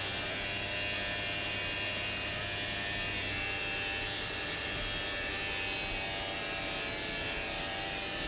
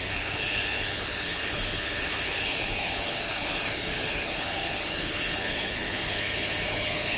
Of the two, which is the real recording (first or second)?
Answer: first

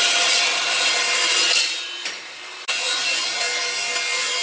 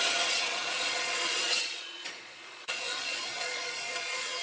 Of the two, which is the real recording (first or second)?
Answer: first